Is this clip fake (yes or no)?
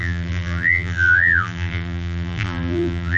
yes